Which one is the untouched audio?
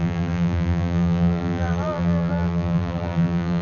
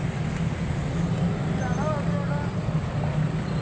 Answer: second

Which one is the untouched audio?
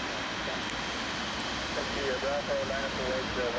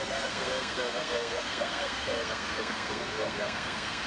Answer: first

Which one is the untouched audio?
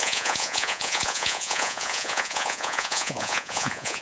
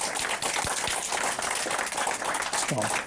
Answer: second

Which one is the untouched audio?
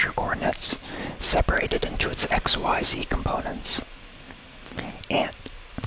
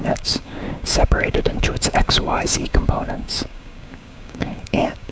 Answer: first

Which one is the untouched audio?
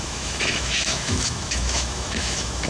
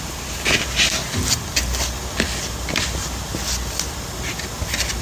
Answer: second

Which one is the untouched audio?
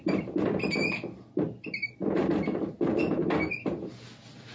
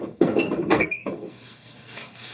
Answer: first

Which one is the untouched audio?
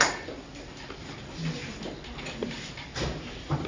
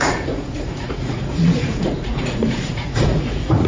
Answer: first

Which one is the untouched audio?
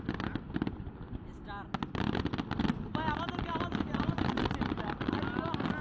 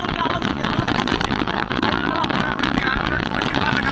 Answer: first